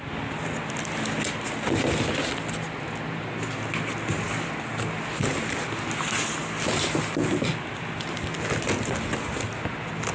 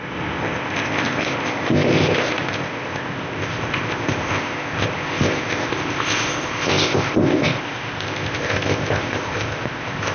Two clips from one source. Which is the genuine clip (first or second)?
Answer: first